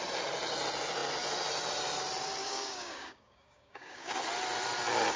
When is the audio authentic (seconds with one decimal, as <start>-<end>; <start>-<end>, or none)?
0.0-2.4; 4.1-5.2